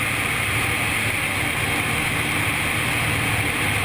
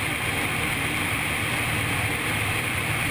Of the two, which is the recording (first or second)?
first